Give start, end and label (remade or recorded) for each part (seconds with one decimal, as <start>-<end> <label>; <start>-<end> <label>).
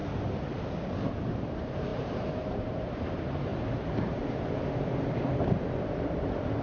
0.0-1.1 recorded; 1.1-6.6 remade